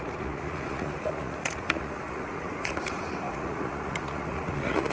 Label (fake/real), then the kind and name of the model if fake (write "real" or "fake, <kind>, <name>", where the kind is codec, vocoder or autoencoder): fake, vocoder, Vocos